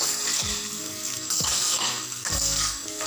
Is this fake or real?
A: fake